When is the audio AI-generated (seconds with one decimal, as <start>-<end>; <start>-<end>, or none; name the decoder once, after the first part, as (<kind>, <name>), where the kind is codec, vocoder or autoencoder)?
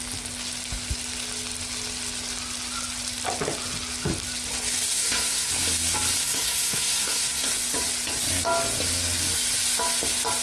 4.9-5.5 (codec, SNAC); 6.2-7.5